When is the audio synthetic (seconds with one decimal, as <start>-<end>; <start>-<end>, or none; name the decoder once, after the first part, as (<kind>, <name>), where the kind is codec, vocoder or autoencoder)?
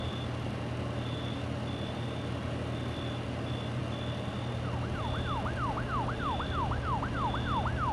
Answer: none